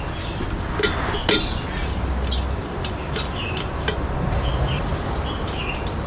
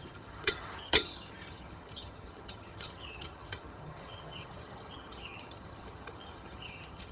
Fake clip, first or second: second